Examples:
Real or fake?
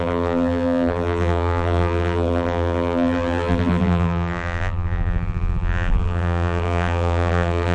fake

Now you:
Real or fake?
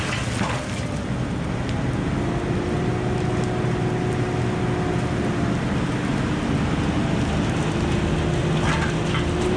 real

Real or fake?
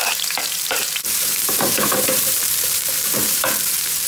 fake